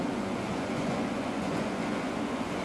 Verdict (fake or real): fake